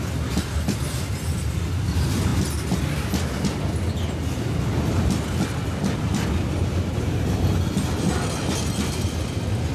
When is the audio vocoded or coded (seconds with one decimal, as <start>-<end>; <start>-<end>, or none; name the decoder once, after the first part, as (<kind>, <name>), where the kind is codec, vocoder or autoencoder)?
none